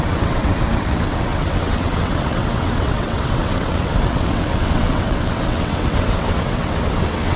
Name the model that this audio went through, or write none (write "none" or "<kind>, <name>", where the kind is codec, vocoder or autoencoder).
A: vocoder, WaveNeXt